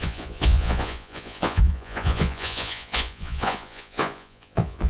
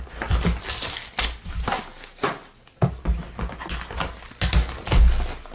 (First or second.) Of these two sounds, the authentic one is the second